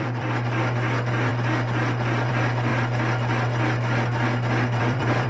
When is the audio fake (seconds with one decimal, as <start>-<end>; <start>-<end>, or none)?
0.0-1.3; 2.3-2.7; 4.8-5.3

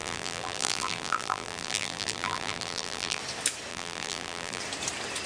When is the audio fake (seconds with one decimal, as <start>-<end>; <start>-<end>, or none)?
0.0-3.2; 3.7-4.6